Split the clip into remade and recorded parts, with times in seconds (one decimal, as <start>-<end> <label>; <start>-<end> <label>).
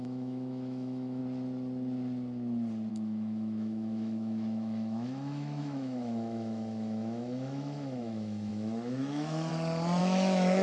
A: 0.0-1.2 remade; 1.2-2.9 recorded; 2.9-9.5 remade; 9.5-10.0 recorded; 10.0-10.6 remade